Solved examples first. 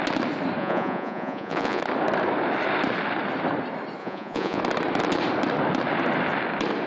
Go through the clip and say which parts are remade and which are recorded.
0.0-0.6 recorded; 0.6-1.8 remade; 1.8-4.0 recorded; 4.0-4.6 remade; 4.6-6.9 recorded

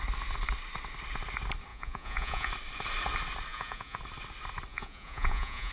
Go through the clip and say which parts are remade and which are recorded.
0.0-1.7 recorded; 1.7-2.5 remade; 2.5-3.5 recorded; 3.5-4.0 remade; 4.0-4.7 recorded; 4.7-5.7 remade